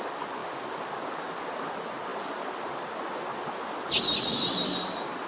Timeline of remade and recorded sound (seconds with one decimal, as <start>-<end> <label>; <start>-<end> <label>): 0.0-5.3 recorded